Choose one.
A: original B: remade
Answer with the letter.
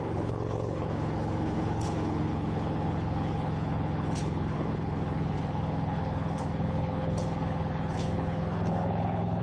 B